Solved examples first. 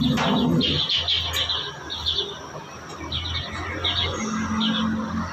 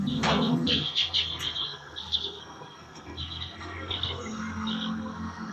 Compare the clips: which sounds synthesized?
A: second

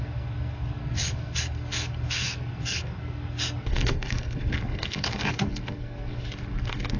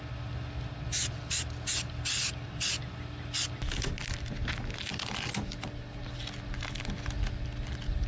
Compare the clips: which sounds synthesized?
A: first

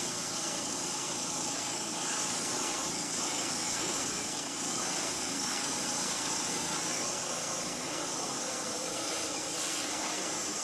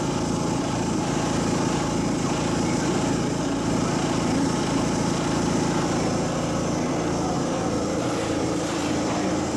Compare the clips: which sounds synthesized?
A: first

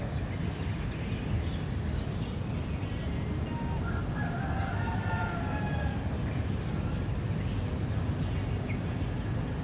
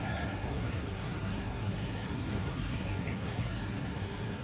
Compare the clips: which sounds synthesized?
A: second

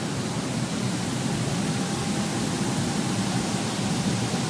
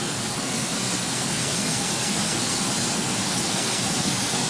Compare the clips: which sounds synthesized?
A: second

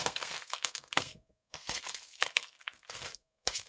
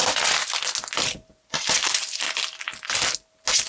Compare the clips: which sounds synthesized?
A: first